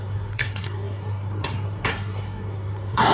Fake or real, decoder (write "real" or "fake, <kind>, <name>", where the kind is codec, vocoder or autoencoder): fake, codec, SNAC